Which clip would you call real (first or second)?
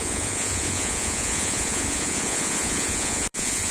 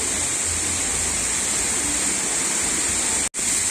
second